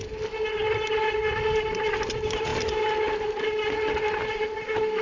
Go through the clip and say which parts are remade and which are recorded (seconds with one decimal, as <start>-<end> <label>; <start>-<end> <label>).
0.0-5.0 recorded